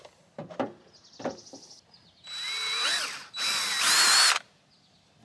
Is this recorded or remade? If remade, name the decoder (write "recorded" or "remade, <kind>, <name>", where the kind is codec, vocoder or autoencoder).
recorded